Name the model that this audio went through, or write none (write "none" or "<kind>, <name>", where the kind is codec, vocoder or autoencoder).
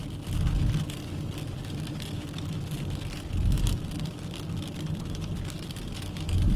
none